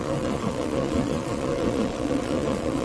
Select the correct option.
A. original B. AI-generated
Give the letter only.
B